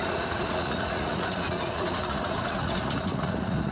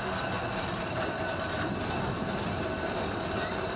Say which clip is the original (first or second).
second